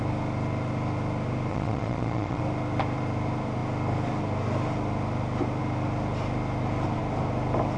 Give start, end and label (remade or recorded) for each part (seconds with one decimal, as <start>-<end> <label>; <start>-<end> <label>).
0.0-1.5 recorded; 1.5-2.4 remade; 2.4-7.8 recorded